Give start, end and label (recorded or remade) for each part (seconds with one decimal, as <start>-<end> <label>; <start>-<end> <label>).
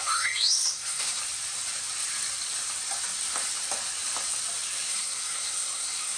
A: 0.0-1.2 remade; 1.2-4.9 recorded; 4.9-6.2 remade